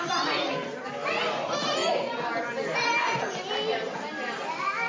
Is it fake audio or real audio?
real